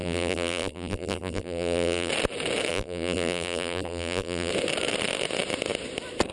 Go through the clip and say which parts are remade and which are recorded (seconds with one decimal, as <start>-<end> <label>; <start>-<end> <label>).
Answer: 0.0-2.1 remade; 2.1-2.7 recorded; 2.7-4.5 remade; 4.5-6.3 recorded